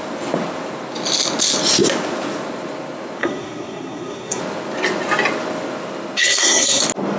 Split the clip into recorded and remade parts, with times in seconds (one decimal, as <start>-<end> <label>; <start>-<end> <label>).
0.0-3.2 recorded; 3.2-4.4 remade; 4.4-6.2 recorded; 6.2-6.8 remade; 6.8-7.2 recorded